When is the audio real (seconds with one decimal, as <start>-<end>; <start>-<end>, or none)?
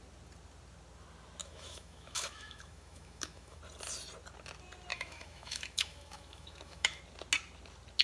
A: 0.0-1.4; 3.6-4.9; 7.0-8.0